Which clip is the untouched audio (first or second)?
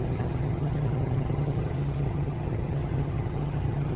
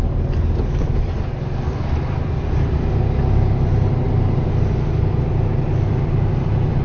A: second